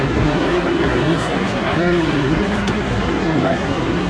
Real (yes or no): no